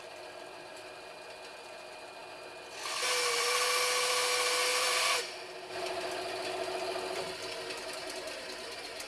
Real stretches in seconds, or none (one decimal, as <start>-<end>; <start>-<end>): 0.0-4.7; 5.3-9.1